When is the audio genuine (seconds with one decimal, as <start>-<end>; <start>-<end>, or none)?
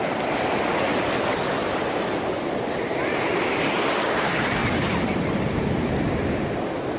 0.0-7.0